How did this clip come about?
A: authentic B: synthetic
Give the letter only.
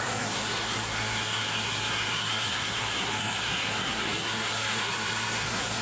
B